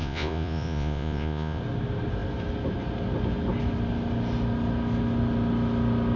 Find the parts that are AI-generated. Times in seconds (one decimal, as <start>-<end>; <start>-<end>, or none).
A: 0.0-1.6